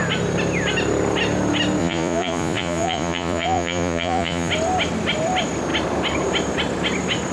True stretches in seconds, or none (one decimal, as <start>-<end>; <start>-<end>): 0.0-1.8; 4.5-7.3